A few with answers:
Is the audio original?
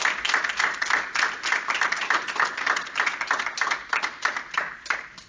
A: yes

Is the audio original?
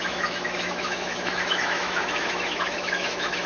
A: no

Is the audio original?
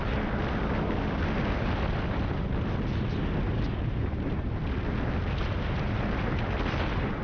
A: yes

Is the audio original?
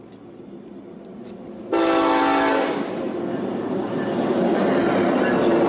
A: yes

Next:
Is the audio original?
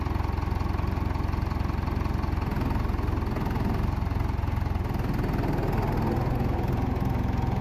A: yes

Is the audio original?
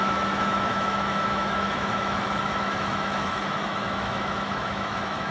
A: no